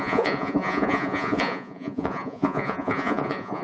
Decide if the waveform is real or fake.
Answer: fake